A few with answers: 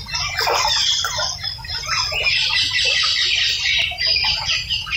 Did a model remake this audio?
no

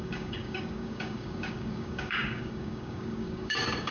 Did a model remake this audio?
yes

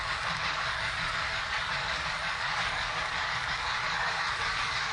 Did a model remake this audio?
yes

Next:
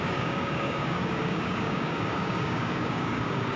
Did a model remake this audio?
yes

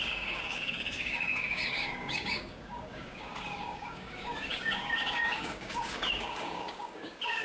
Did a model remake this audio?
yes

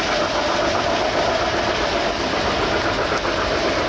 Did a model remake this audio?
no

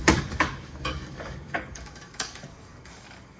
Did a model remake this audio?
yes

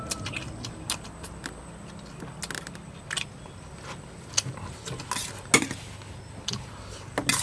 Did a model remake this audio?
no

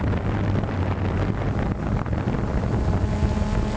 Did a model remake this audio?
no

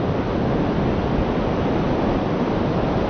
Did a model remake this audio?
no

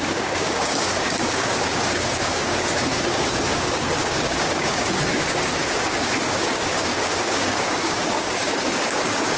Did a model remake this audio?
yes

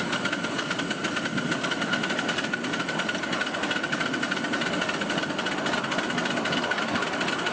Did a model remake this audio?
no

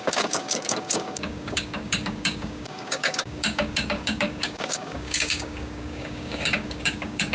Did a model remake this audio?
yes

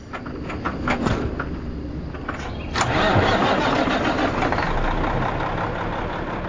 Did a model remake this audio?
no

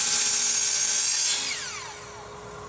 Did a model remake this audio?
no